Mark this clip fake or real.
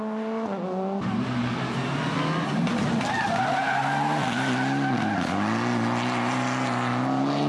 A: real